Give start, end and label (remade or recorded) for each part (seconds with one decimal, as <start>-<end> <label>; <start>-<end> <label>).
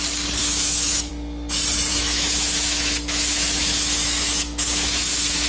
0.0-0.4 recorded; 0.4-1.1 remade; 1.1-1.9 recorded; 1.9-5.5 remade